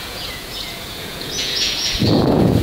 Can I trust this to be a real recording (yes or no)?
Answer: no